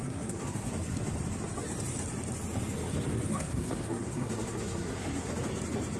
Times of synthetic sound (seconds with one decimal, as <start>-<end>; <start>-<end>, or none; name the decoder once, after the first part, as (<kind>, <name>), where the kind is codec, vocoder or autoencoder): 0.0-0.7 (codec, SNAC); 3.3-5.3